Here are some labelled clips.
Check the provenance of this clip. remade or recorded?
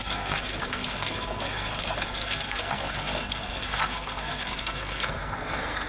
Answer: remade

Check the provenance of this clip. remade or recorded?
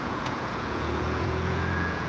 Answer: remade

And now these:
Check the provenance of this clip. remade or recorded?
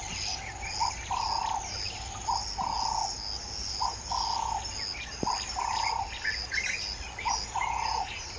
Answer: recorded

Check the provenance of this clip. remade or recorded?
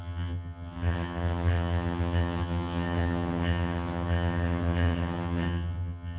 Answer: remade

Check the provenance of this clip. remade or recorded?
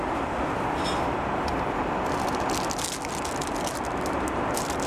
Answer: recorded